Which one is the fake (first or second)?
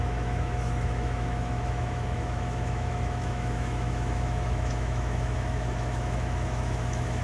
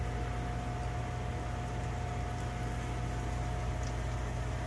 first